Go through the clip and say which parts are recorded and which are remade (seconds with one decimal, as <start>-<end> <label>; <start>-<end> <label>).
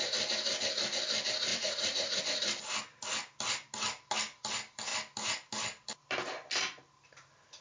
0.0-1.5 recorded; 1.5-2.2 remade; 2.2-7.6 recorded